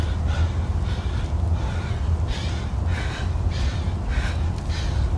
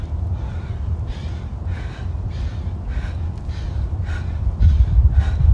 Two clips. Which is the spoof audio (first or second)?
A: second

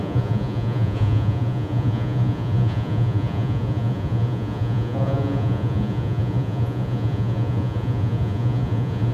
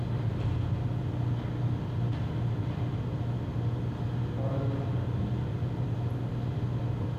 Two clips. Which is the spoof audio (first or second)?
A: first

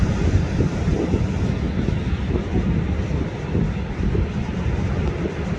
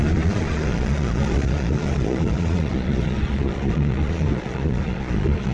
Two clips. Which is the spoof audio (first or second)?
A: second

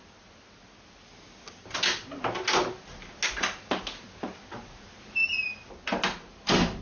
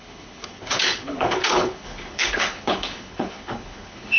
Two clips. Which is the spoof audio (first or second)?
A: second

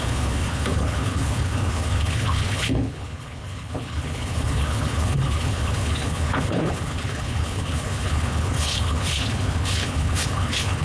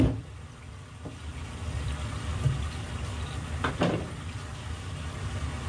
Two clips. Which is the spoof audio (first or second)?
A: first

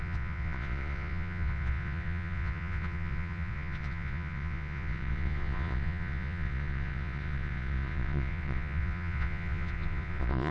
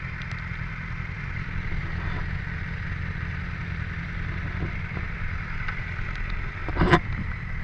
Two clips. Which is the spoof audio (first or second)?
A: first